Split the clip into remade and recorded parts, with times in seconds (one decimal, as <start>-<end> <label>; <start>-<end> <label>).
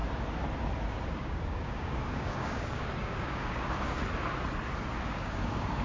0.0-1.1 recorded; 1.1-4.0 remade; 4.0-5.0 recorded; 5.0-5.8 remade